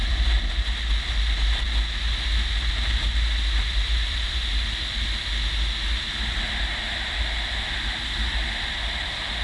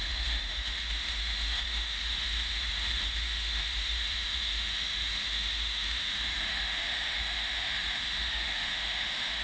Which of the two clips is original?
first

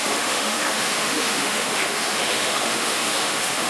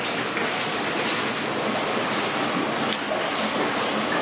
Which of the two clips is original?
second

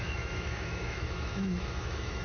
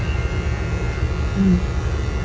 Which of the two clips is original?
second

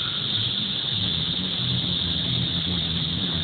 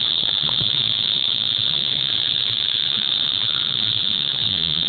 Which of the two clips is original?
first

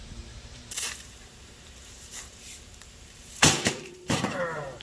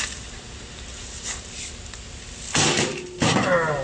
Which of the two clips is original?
second